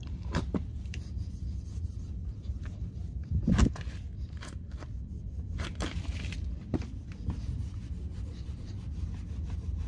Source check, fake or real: fake